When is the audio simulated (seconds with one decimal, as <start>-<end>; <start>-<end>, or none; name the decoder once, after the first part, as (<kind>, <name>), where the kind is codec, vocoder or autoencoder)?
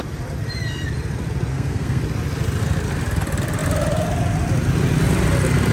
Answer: 1.5-2.0 (codec, SNAC)